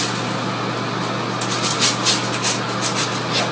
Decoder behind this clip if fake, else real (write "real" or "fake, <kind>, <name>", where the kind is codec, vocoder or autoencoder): real